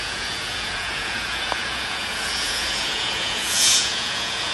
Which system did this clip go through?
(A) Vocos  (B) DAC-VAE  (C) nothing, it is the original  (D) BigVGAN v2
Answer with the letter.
A